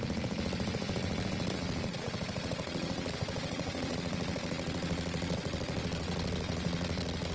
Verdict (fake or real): fake